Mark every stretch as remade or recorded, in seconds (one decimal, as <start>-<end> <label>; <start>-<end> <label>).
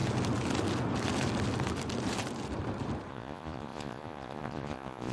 0.0-3.1 recorded; 3.1-5.1 remade